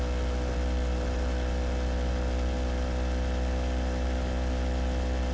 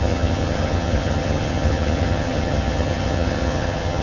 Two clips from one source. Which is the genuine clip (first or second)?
first